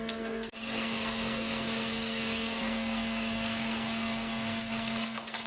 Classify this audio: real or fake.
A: fake